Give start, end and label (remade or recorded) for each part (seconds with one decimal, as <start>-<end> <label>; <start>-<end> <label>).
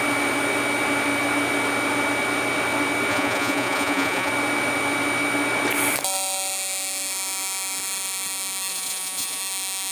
0.0-3.1 recorded; 3.1-4.3 remade; 4.3-8.7 recorded; 8.7-9.4 remade; 9.4-9.9 recorded